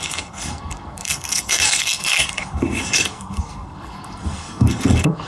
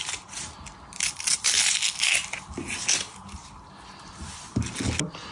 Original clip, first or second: second